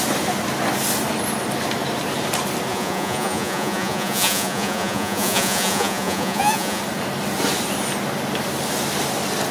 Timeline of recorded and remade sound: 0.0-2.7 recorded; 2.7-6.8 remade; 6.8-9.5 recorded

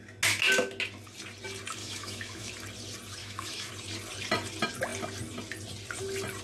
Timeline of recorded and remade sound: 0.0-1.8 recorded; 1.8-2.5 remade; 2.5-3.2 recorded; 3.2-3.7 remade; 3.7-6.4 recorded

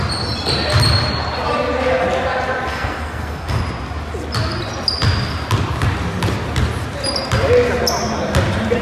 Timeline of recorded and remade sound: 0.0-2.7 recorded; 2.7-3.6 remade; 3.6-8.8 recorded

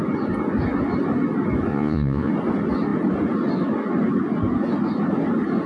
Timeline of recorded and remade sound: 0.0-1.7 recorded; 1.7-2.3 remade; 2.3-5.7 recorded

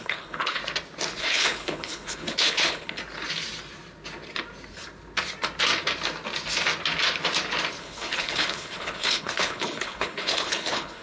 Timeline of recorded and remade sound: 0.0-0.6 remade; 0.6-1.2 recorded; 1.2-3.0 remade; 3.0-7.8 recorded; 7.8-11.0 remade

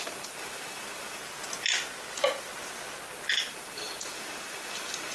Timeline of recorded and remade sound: 0.0-1.2 remade; 1.2-3.5 recorded; 3.5-5.1 remade